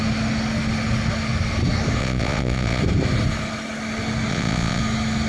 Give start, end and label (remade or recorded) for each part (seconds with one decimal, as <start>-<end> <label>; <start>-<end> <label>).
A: 0.0-2.0 recorded; 2.0-2.8 remade; 2.8-4.3 recorded; 4.3-4.8 remade; 4.8-5.3 recorded